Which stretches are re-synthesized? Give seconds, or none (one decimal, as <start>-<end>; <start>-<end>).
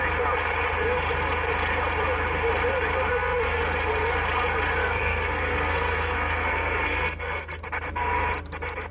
3.1-3.6; 4.8-7.6